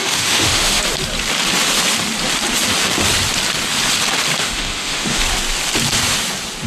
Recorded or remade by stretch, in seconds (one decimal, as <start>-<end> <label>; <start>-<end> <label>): 0.0-0.8 remade; 0.8-4.4 recorded; 4.4-5.2 remade; 5.2-6.7 recorded